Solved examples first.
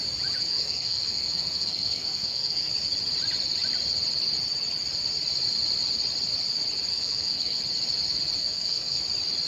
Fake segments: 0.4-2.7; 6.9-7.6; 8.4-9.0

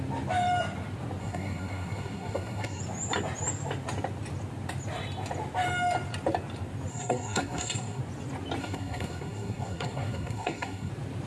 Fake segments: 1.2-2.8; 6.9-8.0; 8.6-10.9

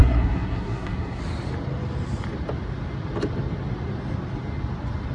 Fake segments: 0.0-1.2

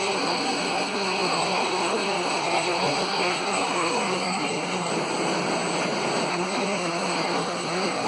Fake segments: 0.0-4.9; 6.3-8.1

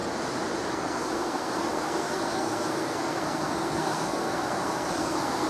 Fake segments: 0.7-5.5

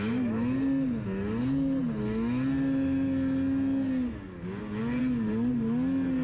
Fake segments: none

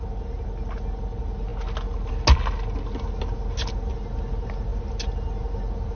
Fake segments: none

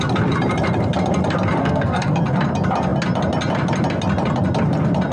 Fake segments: 1.6-2.2